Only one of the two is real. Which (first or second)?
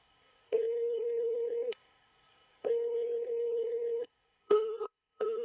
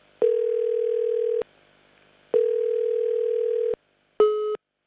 second